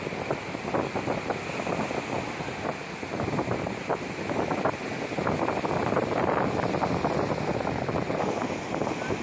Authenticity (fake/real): real